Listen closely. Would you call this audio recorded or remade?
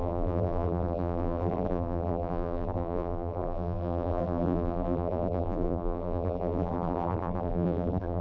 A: remade